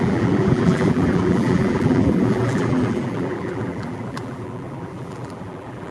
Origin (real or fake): fake